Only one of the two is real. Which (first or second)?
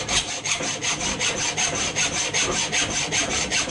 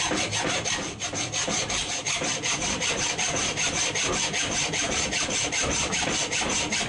first